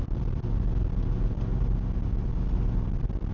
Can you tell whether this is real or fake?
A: real